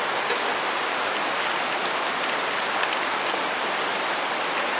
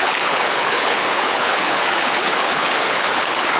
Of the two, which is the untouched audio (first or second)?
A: first